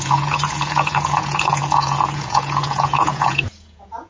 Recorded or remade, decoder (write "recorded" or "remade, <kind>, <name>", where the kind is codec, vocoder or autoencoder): remade, vocoder, Vocos